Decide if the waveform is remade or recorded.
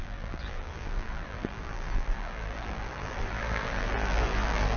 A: remade